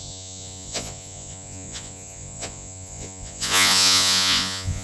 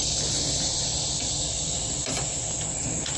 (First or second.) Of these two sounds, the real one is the second